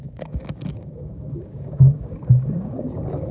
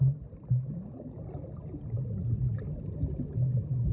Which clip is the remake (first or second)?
first